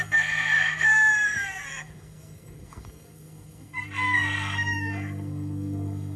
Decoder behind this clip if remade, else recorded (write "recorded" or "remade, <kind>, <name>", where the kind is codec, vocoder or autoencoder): remade, codec, SNAC